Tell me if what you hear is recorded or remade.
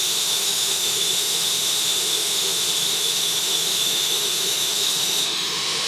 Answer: remade